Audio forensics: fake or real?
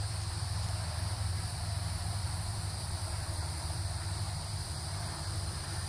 fake